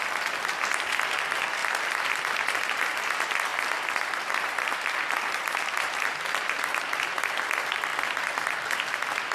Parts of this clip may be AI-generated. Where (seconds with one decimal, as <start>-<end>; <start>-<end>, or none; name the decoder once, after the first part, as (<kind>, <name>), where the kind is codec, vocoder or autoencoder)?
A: 1.6-2.8 (vocoder, BigVGAN v2); 3.5-5.9; 7.9-8.7